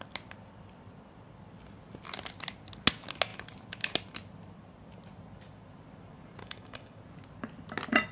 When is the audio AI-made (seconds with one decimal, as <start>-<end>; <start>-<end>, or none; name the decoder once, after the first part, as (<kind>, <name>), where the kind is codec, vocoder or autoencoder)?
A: 6.4-7.0 (codec, DAC)